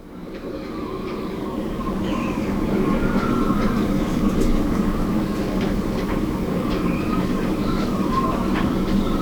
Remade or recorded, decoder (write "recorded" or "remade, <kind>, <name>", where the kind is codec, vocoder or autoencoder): remade, codec, DAC